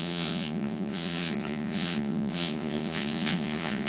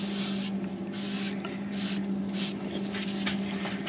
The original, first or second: second